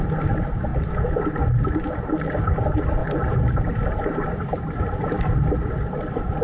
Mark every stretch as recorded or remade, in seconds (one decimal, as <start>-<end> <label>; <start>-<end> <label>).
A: 0.0-3.0 recorded; 3.0-5.3 remade; 5.3-6.4 recorded